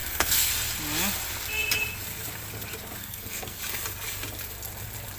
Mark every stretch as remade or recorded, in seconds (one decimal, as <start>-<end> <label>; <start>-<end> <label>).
0.0-0.5 remade; 0.5-3.0 recorded; 3.0-3.6 remade; 3.6-5.2 recorded

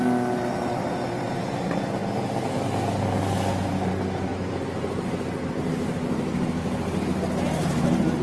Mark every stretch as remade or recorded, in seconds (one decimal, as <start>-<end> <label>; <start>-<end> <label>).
0.0-8.2 recorded

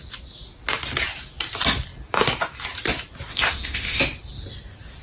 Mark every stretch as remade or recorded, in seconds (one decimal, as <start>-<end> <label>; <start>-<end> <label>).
0.0-3.3 recorded; 3.3-4.0 remade; 4.0-5.0 recorded

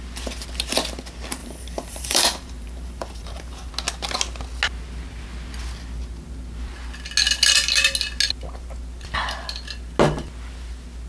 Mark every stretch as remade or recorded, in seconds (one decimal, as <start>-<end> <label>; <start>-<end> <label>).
0.0-1.4 recorded; 1.4-3.7 remade; 3.7-11.1 recorded

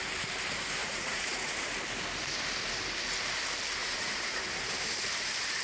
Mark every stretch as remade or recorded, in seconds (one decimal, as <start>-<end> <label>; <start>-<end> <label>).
0.0-0.8 recorded; 0.8-1.5 remade; 1.5-3.8 recorded; 3.8-4.4 remade; 4.4-5.6 recorded

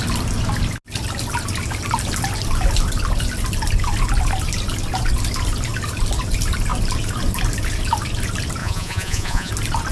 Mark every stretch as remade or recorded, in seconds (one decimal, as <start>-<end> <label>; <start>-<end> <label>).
0.0-8.6 recorded; 8.6-9.5 remade; 9.5-9.9 recorded

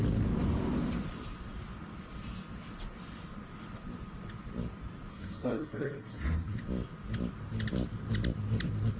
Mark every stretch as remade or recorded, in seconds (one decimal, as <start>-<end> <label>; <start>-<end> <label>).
0.0-5.1 recorded; 5.1-6.6 remade; 6.6-9.0 recorded